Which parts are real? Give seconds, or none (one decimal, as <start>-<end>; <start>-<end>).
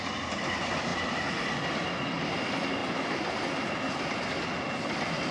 0.0-5.3